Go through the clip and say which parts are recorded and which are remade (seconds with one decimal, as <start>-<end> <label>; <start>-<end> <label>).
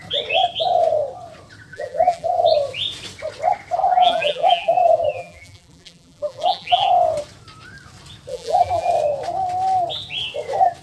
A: 0.0-1.7 recorded; 1.7-2.4 remade; 2.4-3.8 recorded; 3.8-6.9 remade; 6.9-8.3 recorded; 8.3-8.9 remade; 8.9-10.8 recorded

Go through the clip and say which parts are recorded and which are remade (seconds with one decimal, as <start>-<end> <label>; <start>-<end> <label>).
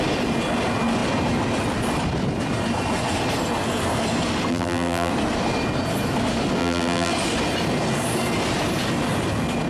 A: 0.0-4.5 recorded; 4.5-5.1 remade; 5.1-6.6 recorded; 6.6-7.1 remade; 7.1-9.7 recorded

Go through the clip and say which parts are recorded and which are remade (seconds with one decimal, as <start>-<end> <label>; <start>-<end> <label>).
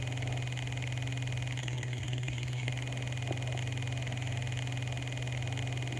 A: 0.0-1.6 recorded; 1.6-2.7 remade; 2.7-6.0 recorded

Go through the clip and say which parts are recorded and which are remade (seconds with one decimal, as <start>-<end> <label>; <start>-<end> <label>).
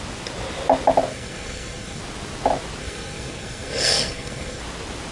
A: 0.0-1.1 recorded; 1.1-2.0 remade; 2.0-2.8 recorded; 2.8-4.6 remade; 4.6-5.1 recorded